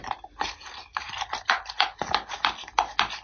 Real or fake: real